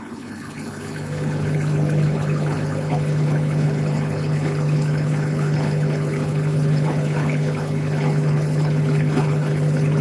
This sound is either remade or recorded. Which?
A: remade